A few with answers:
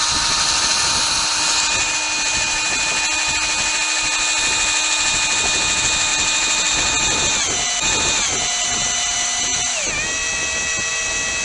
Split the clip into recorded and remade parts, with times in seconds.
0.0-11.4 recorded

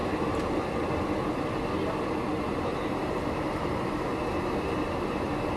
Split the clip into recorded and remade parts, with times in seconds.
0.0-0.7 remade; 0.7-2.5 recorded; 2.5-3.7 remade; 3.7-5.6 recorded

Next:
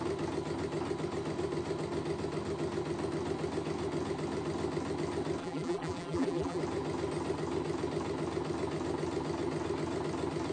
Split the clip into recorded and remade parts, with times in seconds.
0.0-5.4 recorded; 5.4-6.6 remade; 6.6-10.5 recorded

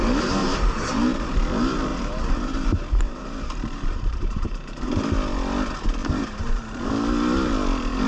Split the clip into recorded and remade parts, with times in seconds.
0.0-0.4 recorded; 0.4-1.4 remade; 1.4-1.9 recorded; 1.9-5.0 remade; 5.0-6.0 recorded; 6.0-6.9 remade; 6.9-8.1 recorded

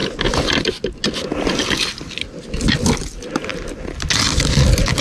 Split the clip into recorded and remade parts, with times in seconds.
0.0-5.0 recorded